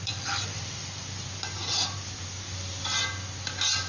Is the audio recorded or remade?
recorded